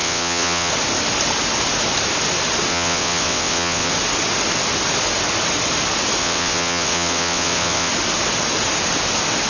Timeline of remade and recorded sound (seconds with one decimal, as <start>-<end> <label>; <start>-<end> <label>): 0.0-0.7 remade; 0.7-2.7 recorded; 2.7-3.9 remade; 3.9-6.2 recorded; 6.2-7.9 remade; 7.9-9.5 recorded

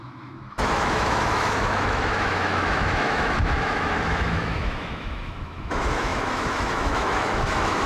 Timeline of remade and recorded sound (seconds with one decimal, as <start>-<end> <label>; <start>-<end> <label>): 0.0-7.9 remade

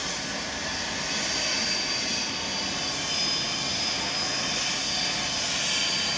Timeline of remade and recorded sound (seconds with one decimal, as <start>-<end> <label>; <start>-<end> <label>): 0.0-6.2 recorded

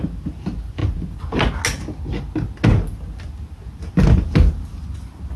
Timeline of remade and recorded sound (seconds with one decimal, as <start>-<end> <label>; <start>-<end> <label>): 0.0-5.4 recorded

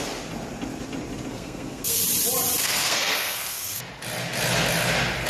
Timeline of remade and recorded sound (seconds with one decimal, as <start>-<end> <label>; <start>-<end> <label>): 0.0-1.3 recorded; 1.3-2.0 remade; 2.0-2.6 recorded; 2.6-3.8 remade; 3.8-5.3 recorded

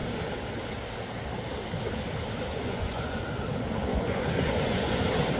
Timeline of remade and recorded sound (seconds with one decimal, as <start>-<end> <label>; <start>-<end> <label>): 0.0-2.5 recorded; 2.5-3.2 remade; 3.2-3.9 recorded; 3.9-5.0 remade; 5.0-5.4 recorded

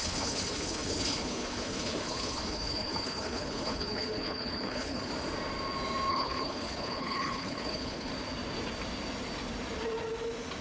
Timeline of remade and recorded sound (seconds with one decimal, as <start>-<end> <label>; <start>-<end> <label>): 0.0-5.1 remade; 5.1-6.1 recorded; 6.1-8.1 remade; 8.1-10.6 recorded

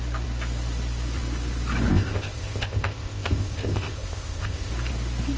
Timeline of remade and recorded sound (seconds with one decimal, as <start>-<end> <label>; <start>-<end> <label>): 0.0-1.9 recorded; 1.9-4.7 remade; 4.7-5.4 recorded